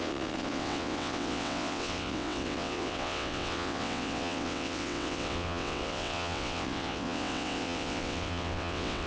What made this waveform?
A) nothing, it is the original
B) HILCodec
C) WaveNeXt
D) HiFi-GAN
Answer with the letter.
C